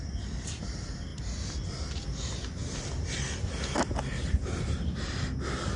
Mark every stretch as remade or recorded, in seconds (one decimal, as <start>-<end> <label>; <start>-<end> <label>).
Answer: 0.0-5.8 recorded